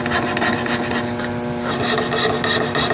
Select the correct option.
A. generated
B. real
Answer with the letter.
B